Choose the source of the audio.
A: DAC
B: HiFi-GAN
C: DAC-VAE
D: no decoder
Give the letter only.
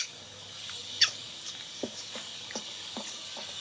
A